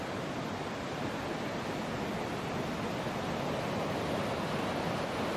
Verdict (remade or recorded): recorded